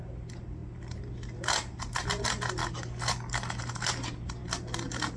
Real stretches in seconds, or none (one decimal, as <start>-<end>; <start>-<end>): 0.0-2.6; 3.6-5.2